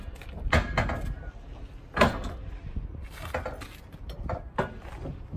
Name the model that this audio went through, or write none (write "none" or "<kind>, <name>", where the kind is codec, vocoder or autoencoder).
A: none